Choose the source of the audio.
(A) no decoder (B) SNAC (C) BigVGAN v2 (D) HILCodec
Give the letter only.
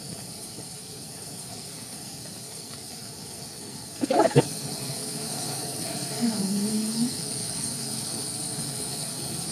B